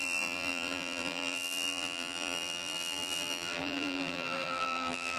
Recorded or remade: remade